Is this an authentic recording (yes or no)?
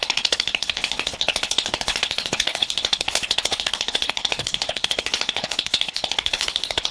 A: no